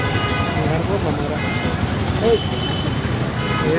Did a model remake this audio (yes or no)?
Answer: no